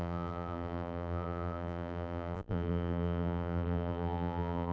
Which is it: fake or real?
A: fake